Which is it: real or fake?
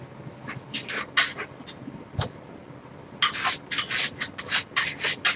real